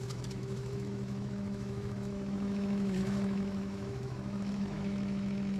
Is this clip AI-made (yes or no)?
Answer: yes